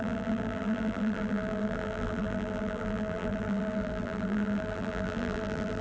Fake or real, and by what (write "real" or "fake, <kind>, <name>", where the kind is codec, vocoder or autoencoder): fake, vocoder, BigVGAN v2